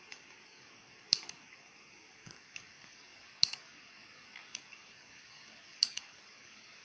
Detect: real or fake fake